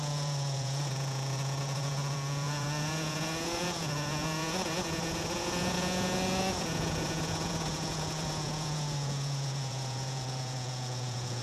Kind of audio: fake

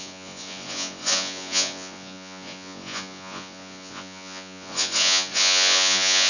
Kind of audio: fake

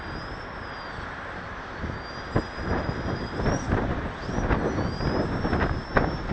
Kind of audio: real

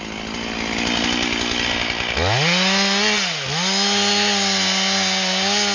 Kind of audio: real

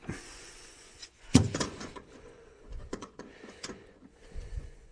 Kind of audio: fake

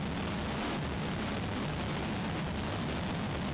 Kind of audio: real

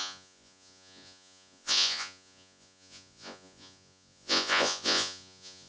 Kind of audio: fake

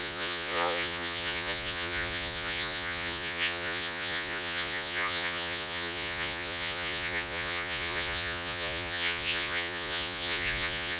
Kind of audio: fake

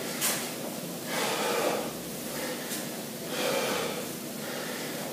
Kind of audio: real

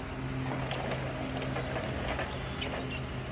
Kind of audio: real